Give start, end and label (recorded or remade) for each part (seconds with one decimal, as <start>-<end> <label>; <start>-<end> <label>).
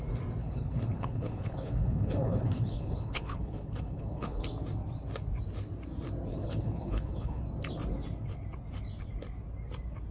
0.0-0.4 recorded; 0.4-4.4 remade; 4.4-6.3 recorded; 6.3-7.4 remade; 7.4-10.1 recorded